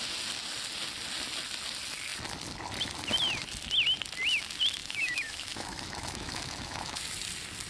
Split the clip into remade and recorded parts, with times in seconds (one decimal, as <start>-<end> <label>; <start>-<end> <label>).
0.0-4.8 recorded; 4.8-7.0 remade; 7.0-7.7 recorded